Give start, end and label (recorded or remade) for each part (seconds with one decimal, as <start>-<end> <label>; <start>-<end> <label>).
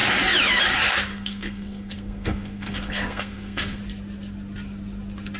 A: 0.0-1.1 recorded; 1.1-3.8 remade; 3.8-5.4 recorded